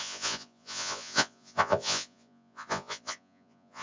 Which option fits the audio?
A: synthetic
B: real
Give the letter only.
A